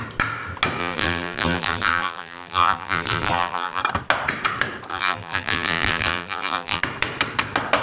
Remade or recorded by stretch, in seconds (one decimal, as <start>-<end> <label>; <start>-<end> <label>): 0.0-0.8 recorded; 0.8-3.8 remade; 3.8-4.9 recorded; 4.9-6.8 remade; 6.8-7.8 recorded